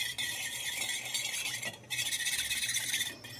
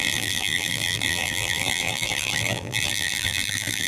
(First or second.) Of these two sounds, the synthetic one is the second